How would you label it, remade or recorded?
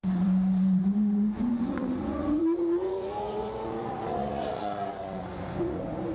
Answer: remade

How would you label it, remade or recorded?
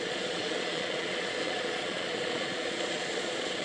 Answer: remade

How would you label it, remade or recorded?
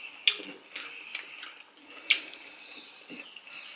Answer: recorded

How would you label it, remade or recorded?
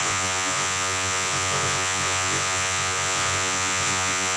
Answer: remade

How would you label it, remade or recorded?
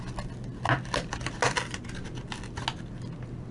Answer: recorded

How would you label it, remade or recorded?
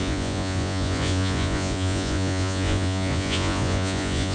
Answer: remade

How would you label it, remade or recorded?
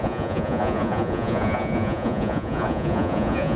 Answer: remade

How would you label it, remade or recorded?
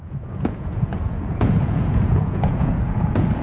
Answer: remade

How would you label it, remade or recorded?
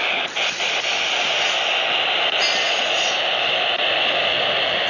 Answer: recorded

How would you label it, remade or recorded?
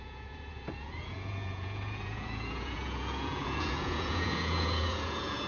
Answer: remade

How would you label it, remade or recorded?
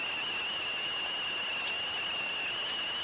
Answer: recorded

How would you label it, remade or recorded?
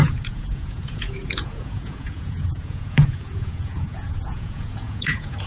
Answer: remade